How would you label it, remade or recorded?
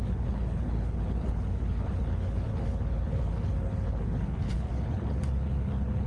remade